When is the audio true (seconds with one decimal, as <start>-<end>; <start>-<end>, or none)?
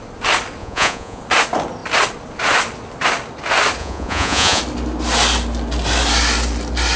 0.0-0.6; 1.2-3.8; 4.6-7.0